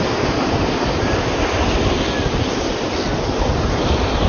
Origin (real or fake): real